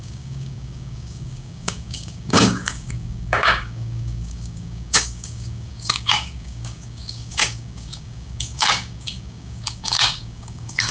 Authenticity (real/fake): fake